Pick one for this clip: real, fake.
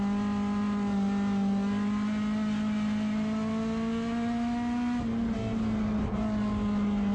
real